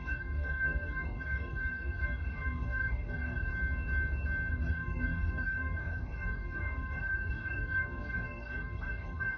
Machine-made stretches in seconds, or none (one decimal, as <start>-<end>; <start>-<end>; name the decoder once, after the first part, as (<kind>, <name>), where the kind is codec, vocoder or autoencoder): 0.0-3.5 (codec, DAC); 4.5-9.4